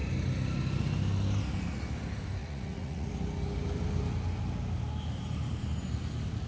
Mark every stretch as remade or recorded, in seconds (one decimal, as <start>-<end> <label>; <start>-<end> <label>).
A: 0.0-2.4 recorded; 2.4-3.1 remade; 3.1-6.5 recorded